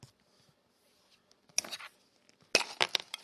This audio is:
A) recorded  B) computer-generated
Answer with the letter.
A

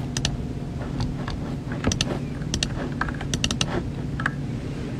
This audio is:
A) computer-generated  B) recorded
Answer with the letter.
B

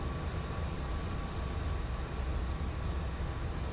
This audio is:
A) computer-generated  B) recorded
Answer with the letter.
B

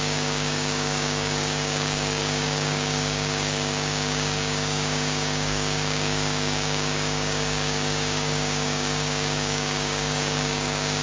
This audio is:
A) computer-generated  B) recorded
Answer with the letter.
A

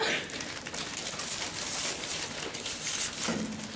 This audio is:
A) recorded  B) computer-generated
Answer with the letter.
A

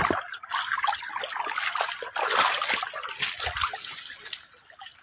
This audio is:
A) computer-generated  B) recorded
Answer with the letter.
B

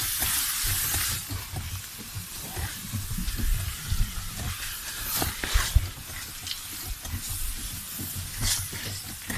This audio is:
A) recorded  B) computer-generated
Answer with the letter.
A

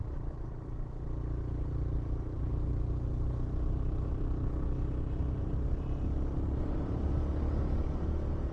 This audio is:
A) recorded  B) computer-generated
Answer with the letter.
A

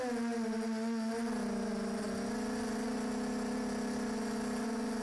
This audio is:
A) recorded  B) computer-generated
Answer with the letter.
A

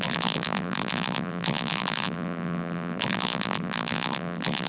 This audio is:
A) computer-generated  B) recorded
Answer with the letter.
A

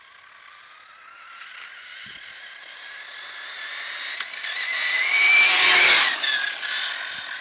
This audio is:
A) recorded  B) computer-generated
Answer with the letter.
A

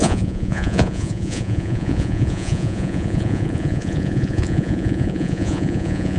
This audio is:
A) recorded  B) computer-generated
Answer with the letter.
B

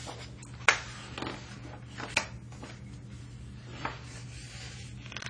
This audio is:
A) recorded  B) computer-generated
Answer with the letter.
A